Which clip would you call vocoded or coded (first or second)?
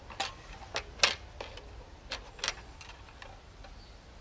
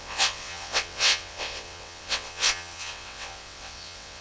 second